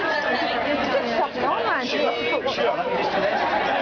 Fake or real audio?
real